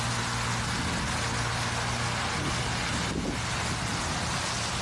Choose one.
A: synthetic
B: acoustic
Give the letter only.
B